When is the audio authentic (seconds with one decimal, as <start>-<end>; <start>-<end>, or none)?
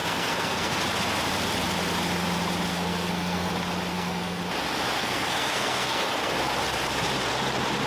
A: 0.8-2.7; 3.5-3.9; 4.4-5.0; 6.3-7.9